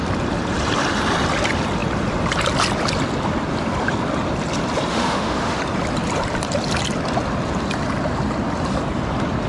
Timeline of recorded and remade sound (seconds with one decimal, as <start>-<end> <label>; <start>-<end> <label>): 0.0-4.9 recorded; 4.9-5.6 remade; 5.6-9.5 recorded